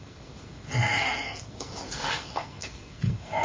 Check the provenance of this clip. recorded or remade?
remade